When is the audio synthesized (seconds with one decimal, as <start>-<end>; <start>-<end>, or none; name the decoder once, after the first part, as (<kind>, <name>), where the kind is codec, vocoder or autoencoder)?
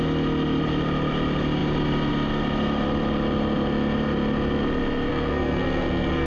5.1-6.3 (codec, SNAC)